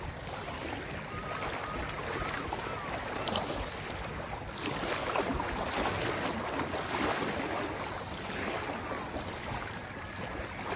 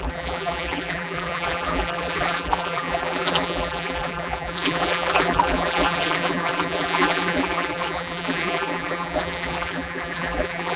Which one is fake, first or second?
second